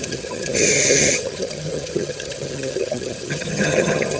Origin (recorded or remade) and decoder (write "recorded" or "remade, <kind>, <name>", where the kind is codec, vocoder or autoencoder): remade, vocoder, HiFi-GAN